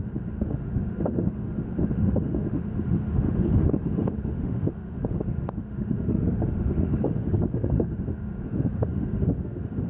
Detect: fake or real fake